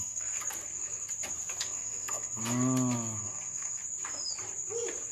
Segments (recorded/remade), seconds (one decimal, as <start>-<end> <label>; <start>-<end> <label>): 0.0-0.4 remade; 0.4-1.6 recorded; 1.6-2.4 remade; 2.4-3.2 recorded; 3.2-3.8 remade; 3.8-5.1 recorded